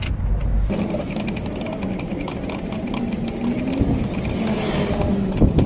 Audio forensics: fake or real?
real